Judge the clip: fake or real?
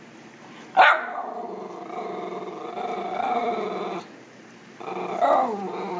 real